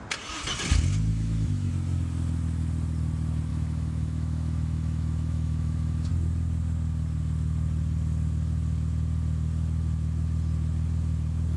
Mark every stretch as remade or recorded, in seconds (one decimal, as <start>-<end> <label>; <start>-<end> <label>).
0.0-1.1 recorded; 1.1-1.7 remade; 1.7-3.5 recorded; 3.5-6.1 remade; 6.1-11.6 recorded